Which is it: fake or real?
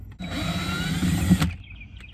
real